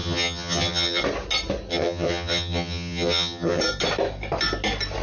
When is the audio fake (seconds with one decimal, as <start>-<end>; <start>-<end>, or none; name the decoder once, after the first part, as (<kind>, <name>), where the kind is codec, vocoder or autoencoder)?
0.0-1.0 (vocoder, HiFi-GAN); 1.7-3.6